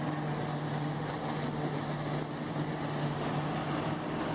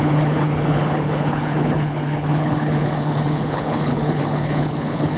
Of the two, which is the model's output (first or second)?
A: second